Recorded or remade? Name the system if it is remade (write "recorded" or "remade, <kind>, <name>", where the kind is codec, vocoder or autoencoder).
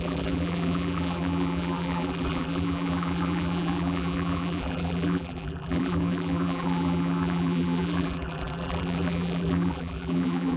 remade, vocoder, BigVGAN v2